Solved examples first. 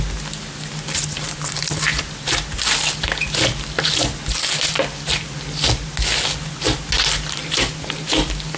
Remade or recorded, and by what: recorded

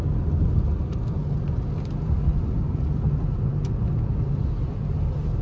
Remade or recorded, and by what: recorded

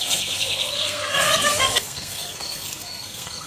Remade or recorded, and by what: remade, codec, SNAC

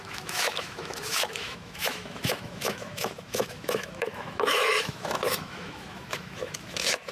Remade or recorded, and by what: remade, autoencoder, DAC-VAE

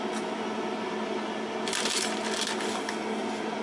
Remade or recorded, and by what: recorded